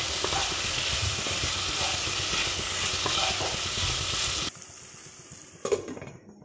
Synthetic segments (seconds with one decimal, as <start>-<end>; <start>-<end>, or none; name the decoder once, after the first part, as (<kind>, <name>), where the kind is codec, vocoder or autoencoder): 2.4-2.9 (codec, DAC)